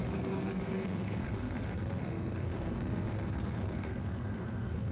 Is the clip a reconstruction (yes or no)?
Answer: yes